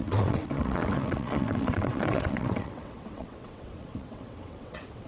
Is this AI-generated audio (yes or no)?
yes